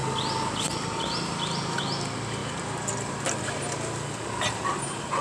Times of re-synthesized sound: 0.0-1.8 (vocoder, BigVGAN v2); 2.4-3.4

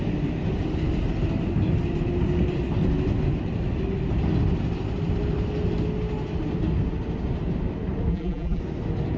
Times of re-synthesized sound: 8.1-8.6 (vocoder, BigVGAN v2)